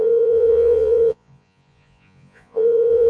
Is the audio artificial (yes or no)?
yes